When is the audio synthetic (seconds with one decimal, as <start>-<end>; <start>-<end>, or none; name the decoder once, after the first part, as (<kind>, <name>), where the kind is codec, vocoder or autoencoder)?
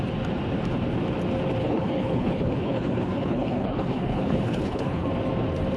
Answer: 1.6-5.1 (codec, HILCodec)